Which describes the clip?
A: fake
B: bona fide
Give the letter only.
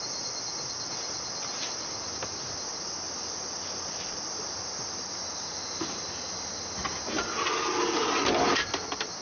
B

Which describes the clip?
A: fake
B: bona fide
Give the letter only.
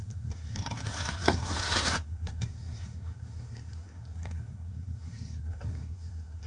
A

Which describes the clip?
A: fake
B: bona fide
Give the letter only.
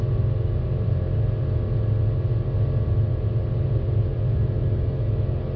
B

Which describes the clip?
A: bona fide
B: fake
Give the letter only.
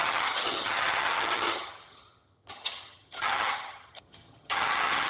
B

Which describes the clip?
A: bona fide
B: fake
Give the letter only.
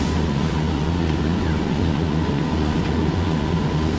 B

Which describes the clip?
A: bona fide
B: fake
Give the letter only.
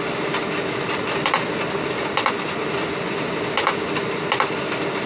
A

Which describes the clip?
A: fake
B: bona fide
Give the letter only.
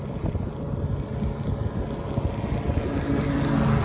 B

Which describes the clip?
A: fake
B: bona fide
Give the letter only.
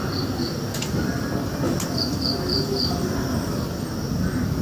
B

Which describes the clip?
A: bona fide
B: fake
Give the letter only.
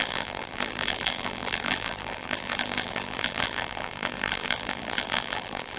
B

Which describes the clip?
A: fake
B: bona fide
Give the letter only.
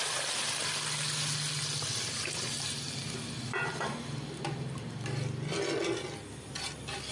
B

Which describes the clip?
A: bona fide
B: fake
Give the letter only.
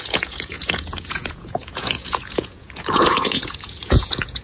B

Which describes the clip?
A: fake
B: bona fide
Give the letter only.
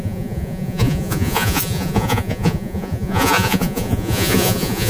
A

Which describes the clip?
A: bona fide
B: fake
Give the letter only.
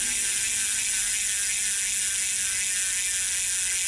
A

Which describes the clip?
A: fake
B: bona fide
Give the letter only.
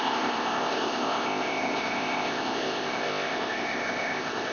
A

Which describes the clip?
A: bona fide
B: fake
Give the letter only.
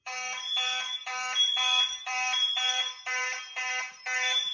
B